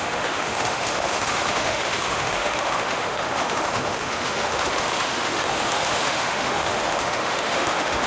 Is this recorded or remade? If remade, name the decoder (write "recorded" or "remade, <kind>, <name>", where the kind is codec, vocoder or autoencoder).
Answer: remade, autoencoder, DAC-VAE